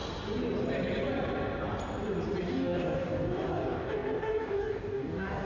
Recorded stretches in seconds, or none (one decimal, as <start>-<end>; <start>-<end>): 0.0-2.5